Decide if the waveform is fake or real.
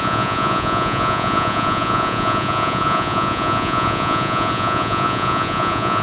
fake